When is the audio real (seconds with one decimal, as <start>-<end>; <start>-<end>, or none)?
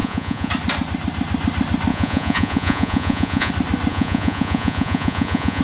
0.5-1.9; 3.5-3.9